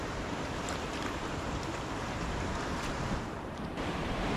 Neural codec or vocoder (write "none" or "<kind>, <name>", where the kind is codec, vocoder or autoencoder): vocoder, BigVGAN v2